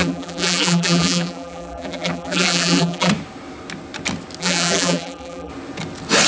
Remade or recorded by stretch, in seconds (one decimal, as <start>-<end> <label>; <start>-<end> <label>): 0.0-3.1 remade; 3.1-4.4 recorded; 4.4-5.5 remade; 5.5-6.3 recorded